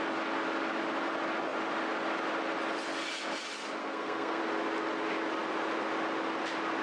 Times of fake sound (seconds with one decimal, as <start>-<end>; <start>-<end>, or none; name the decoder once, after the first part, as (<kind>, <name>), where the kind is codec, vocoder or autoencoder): 3.8-4.4 (codec, SNAC)